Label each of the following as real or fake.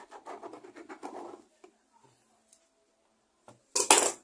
real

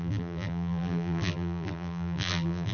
fake